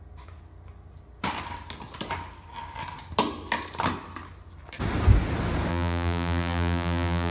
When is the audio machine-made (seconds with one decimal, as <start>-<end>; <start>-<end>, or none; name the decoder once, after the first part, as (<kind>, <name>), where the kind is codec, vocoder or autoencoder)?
5.7-7.3 (vocoder, BigVGAN v2)